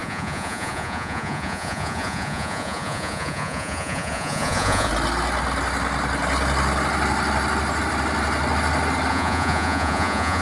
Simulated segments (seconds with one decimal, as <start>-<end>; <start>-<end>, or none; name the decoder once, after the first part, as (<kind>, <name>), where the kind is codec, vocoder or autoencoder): 0.0-4.9 (vocoder, Vocos); 9.1-10.4